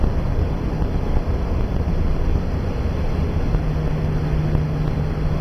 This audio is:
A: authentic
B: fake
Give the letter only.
A